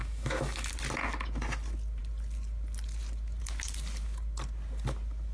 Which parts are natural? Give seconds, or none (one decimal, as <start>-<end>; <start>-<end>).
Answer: 0.7-5.3